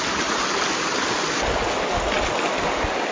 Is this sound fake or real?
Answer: real